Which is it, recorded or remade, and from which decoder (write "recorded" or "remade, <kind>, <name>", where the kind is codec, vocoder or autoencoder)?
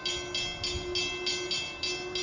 recorded